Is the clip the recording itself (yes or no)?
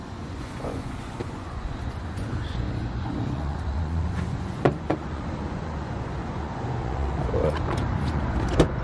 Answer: no